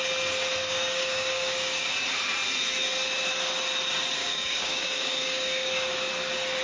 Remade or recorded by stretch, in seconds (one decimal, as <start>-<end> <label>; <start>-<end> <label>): 0.0-0.6 recorded; 0.6-1.9 remade; 1.9-4.2 recorded; 4.2-6.1 remade; 6.1-6.6 recorded